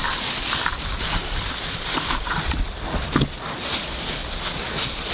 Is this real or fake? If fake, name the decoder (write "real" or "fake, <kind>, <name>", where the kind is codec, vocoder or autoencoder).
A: real